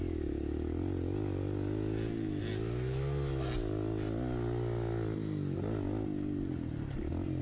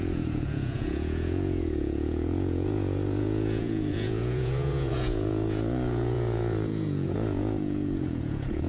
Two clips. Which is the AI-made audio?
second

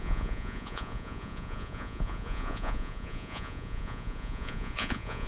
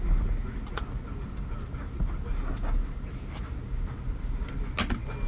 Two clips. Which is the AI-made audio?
first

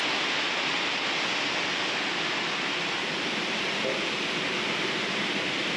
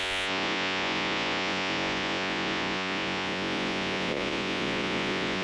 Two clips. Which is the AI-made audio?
second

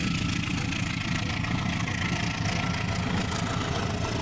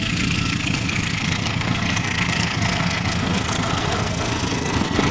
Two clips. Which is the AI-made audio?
second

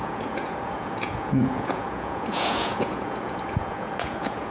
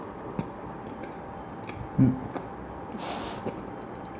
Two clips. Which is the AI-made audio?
first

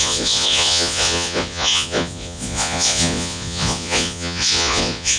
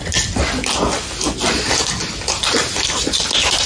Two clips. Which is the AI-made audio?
first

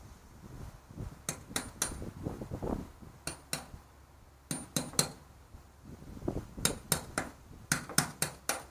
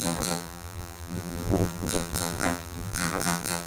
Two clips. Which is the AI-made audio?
second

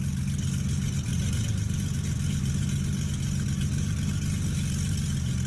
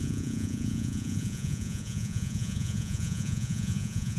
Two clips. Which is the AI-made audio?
second